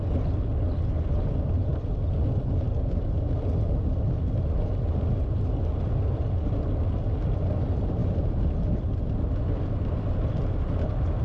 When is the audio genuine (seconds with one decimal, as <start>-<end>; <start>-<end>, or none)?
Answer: 0.0-11.2